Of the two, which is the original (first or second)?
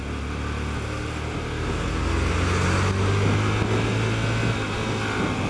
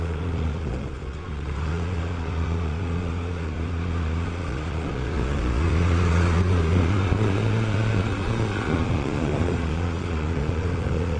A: first